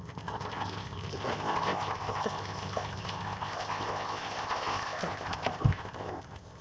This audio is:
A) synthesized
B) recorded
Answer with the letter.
A